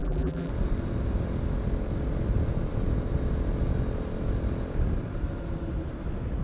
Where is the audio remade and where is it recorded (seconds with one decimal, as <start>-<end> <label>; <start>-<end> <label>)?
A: 0.0-0.5 remade; 0.5-6.4 recorded